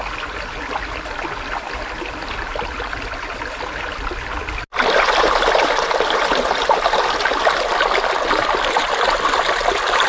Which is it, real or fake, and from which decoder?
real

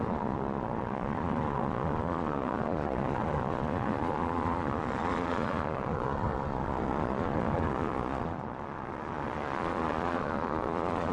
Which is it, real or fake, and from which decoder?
fake, vocoder, Vocos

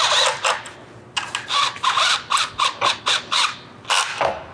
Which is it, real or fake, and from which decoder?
real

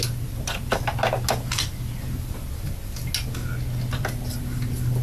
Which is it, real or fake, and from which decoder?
real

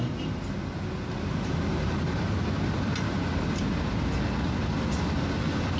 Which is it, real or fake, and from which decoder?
real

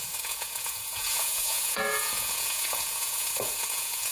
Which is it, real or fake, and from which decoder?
fake, vocoder, Vocos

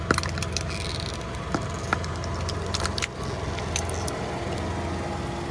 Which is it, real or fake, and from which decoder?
real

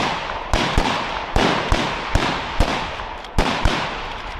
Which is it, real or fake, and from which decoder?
real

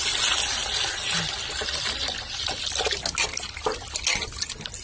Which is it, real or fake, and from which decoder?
real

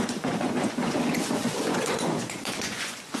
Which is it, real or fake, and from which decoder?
fake, vocoder, Vocos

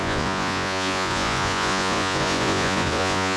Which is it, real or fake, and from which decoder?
fake, vocoder, Vocos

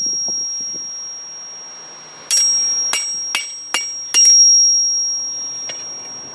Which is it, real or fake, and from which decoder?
real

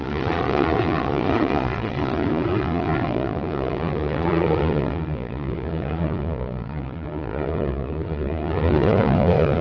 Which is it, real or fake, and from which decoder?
fake, vocoder, Vocos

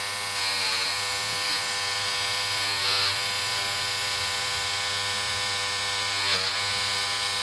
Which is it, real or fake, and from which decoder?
fake, vocoder, Vocos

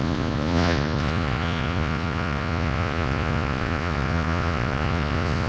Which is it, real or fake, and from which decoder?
fake, vocoder, Vocos